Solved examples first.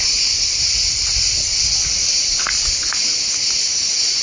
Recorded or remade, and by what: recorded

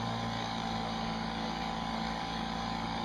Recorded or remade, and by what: remade, codec, DAC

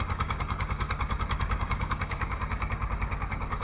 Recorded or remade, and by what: remade, codec, DAC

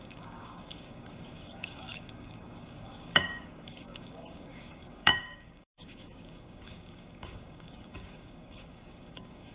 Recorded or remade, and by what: remade, codec, DAC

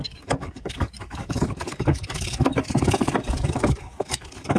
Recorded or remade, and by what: remade, codec, DAC